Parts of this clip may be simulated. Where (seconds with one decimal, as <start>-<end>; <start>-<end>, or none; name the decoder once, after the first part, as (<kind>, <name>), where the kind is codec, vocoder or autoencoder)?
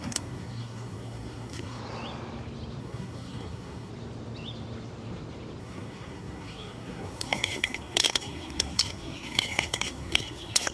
0.0-1.8 (codec, SNAC); 2.8-3.9; 5.6-10.7